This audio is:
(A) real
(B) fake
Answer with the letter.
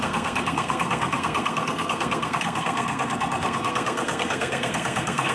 B